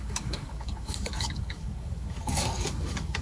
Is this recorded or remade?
remade